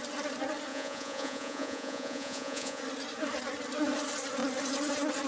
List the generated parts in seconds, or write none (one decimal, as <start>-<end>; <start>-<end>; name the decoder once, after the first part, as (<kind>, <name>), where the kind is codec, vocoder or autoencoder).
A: 0.7-2.8 (vocoder, Vocos)